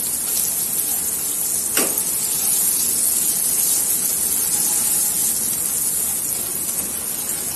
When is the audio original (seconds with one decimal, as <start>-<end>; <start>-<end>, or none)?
0.0-7.6